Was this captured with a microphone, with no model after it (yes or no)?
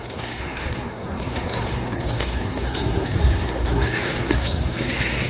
no